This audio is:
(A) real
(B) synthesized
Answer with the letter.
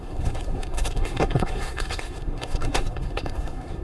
B